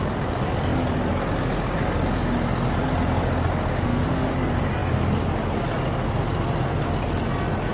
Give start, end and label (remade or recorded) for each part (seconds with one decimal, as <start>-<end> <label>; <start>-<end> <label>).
0.0-3.7 recorded; 3.7-4.3 remade; 4.3-7.7 recorded